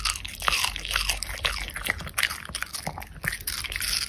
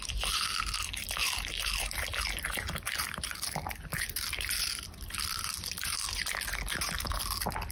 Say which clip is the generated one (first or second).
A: second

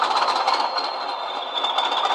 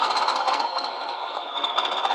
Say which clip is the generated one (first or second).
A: second